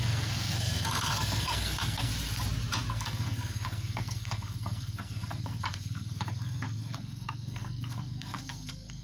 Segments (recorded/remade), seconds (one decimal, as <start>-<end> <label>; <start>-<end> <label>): 0.0-2.1 remade; 2.1-2.9 recorded; 2.9-9.0 remade